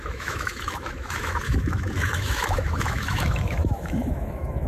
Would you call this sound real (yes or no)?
no